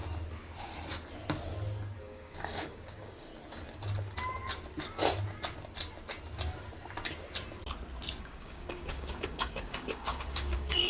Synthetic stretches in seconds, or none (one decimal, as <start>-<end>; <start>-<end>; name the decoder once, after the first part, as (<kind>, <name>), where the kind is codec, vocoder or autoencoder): 2.0-3.3 (codec, DAC); 8.2-10.9